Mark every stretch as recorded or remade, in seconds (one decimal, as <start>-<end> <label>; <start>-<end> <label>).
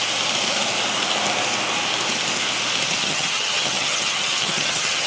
0.0-3.0 recorded; 3.0-5.1 remade